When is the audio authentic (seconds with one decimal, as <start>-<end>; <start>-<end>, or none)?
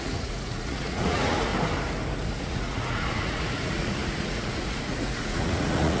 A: 1.5-2.4